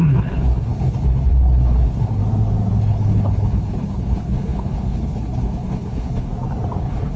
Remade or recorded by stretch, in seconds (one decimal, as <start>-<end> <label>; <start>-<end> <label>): 0.0-2.2 remade; 2.2-2.8 recorded; 2.8-6.3 remade; 6.3-6.8 recorded; 6.8-7.2 remade